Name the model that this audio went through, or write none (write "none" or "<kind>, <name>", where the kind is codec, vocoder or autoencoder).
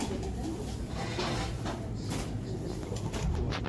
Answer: vocoder, BigVGAN v2